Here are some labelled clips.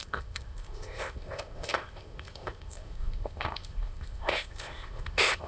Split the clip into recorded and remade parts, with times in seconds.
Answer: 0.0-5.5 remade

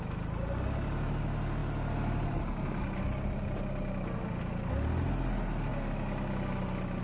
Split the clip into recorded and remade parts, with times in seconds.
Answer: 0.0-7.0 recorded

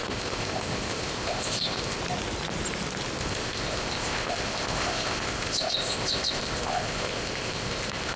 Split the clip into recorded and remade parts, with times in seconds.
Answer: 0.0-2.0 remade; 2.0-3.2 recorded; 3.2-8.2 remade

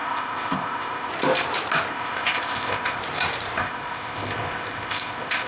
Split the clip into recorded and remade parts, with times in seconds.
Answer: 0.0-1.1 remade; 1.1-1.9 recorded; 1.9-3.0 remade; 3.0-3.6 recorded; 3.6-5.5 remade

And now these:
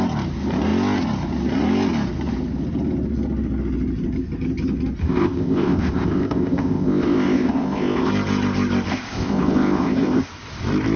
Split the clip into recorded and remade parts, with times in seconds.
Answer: 0.0-5.0 recorded; 5.0-8.1 remade; 8.1-8.9 recorded; 8.9-10.3 remade; 10.3-11.0 recorded

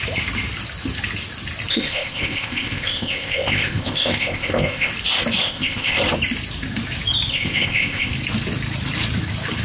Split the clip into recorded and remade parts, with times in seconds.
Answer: 0.0-1.7 recorded; 1.7-4.9 remade; 4.9-5.4 recorded; 5.4-6.0 remade; 6.0-7.3 recorded; 7.3-8.1 remade; 8.1-9.6 recorded

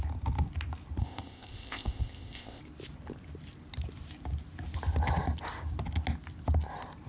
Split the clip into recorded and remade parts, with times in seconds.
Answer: 0.0-1.0 recorded; 1.0-2.6 remade; 2.6-7.1 recorded